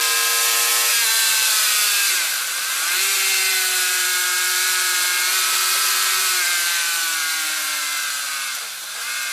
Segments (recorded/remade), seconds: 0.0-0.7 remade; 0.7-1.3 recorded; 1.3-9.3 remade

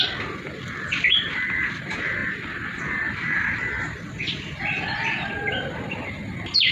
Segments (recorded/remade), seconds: 0.0-6.7 recorded

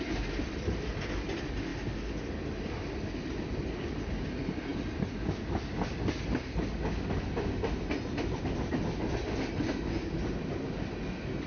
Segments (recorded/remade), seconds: 0.0-11.5 recorded

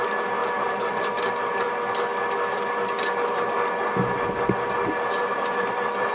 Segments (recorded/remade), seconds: 0.0-0.4 recorded; 0.4-1.7 remade; 1.7-5.2 recorded; 5.2-6.1 remade

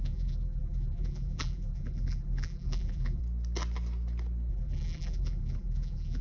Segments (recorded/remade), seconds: 0.0-3.2 remade; 3.2-4.5 recorded; 4.5-6.2 remade

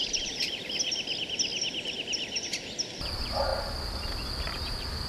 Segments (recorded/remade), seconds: 0.0-0.6 remade; 0.6-5.1 recorded